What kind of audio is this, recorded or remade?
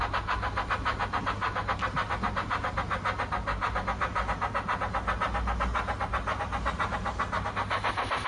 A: recorded